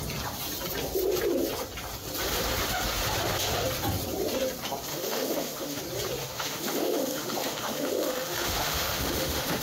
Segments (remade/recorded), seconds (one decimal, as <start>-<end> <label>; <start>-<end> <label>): 0.0-4.9 recorded; 4.9-5.8 remade; 5.8-6.2 recorded; 6.2-9.6 remade